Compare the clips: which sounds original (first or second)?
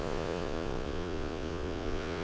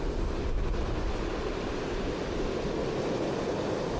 second